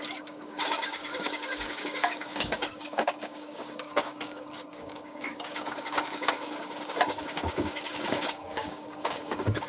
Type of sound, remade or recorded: remade